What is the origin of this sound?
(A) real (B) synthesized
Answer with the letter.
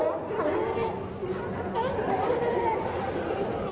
A